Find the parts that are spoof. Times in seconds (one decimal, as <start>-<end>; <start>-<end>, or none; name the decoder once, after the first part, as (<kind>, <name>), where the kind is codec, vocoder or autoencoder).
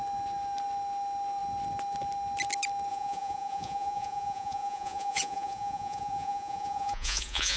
2.9-7.6 (vocoder, Vocos)